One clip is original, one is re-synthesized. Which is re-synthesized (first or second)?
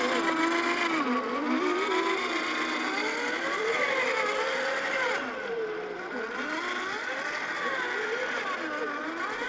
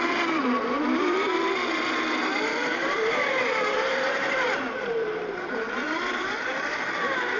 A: second